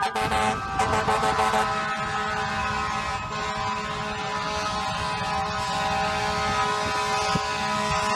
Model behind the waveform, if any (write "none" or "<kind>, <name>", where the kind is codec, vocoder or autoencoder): none